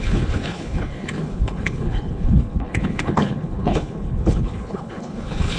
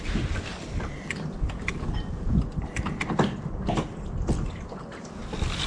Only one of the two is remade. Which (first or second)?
first